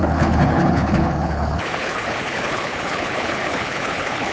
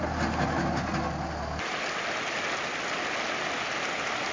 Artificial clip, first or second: first